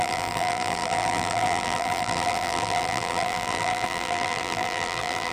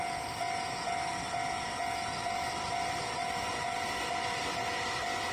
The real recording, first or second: second